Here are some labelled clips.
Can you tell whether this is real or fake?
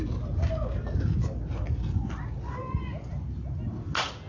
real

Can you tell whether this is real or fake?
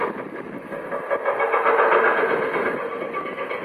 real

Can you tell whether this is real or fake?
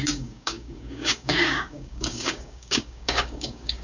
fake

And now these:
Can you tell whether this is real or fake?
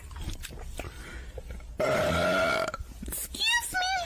real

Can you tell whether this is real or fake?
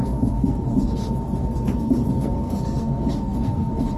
fake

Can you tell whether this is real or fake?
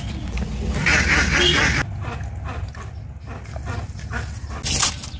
real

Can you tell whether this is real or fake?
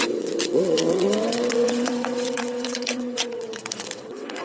fake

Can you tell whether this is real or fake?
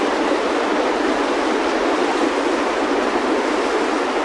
real